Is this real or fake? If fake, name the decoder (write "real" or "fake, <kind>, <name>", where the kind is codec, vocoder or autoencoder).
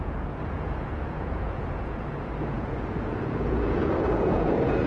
fake, vocoder, Vocos